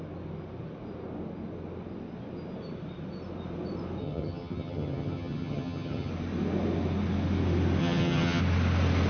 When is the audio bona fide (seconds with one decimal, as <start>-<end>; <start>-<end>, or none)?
0.0-4.0; 6.1-7.8; 8.4-9.1